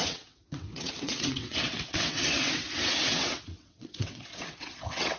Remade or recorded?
remade